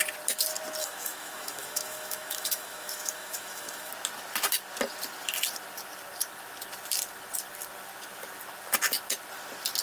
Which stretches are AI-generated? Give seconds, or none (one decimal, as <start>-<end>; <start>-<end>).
0.8-3.9